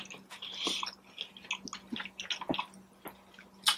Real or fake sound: real